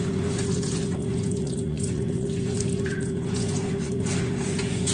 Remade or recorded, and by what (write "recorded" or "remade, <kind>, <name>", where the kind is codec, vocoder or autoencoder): remade, vocoder, Vocos